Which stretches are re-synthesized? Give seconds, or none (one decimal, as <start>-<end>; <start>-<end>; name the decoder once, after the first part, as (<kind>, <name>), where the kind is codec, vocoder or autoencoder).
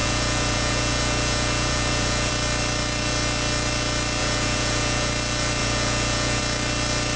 0.0-2.3 (vocoder, Vocos); 4.2-5.1; 5.6-6.4